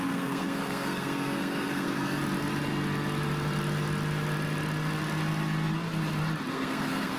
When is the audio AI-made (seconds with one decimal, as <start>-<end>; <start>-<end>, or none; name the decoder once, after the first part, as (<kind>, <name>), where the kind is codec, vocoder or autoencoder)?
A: 0.0-2.2 (codec, SNAC); 6.5-7.2